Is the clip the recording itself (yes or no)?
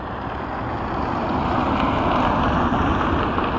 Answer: no